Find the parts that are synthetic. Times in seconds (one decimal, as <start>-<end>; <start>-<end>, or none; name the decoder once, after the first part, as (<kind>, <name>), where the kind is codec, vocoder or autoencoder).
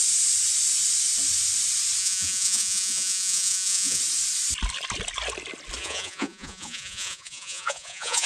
2.0-4.0 (vocoder, Vocos); 5.8-8.3